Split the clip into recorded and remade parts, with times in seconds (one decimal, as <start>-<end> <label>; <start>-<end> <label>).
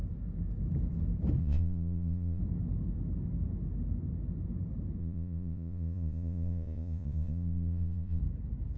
0.0-1.4 recorded; 1.4-2.4 remade; 2.4-5.0 recorded; 5.0-8.2 remade; 8.2-8.8 recorded